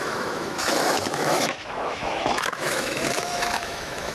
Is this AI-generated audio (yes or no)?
yes